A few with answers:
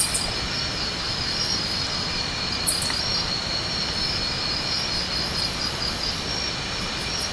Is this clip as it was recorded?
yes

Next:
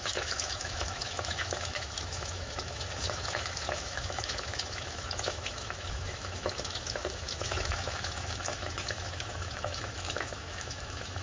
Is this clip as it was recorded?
no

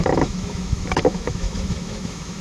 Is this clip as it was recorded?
no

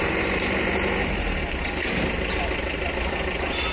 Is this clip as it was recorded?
yes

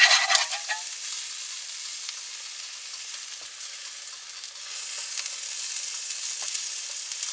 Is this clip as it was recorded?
yes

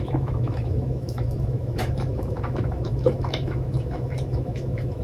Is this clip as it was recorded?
no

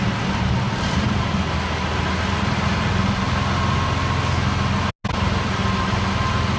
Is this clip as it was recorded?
yes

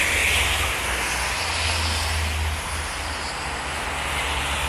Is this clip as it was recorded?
yes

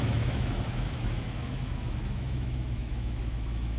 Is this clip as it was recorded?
no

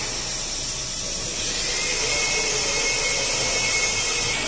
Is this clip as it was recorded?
yes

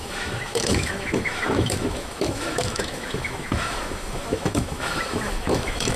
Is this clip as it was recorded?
no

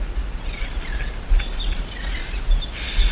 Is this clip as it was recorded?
yes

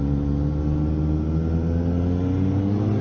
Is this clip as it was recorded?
yes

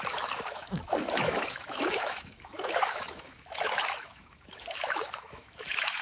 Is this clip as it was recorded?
no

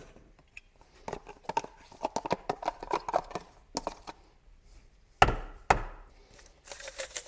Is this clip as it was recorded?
yes